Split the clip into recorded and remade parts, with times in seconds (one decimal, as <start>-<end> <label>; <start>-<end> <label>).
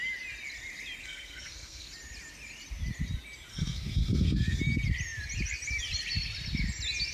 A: 0.0-1.0 recorded; 1.0-1.9 remade; 1.9-3.5 recorded; 3.5-4.6 remade; 4.6-7.1 recorded